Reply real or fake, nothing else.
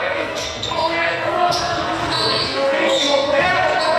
fake